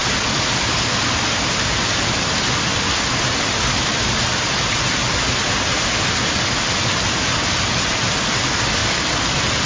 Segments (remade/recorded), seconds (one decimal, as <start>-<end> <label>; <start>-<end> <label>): 0.0-0.7 remade; 0.7-8.8 recorded; 8.8-9.7 remade